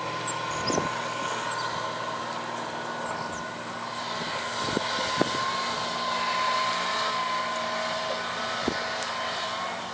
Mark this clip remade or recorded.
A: recorded